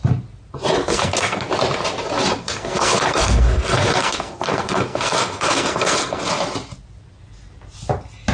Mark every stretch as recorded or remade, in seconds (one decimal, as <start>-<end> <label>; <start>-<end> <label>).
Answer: 0.0-0.8 recorded; 0.8-1.5 remade; 1.5-2.4 recorded; 2.4-6.2 remade; 6.2-8.3 recorded